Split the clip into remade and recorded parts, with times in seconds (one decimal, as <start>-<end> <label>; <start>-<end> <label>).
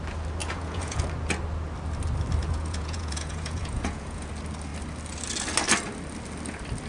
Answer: 0.0-0.4 recorded; 0.4-1.0 remade; 1.0-2.4 recorded; 2.4-4.3 remade; 4.3-6.9 recorded